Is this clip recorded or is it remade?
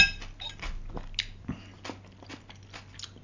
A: recorded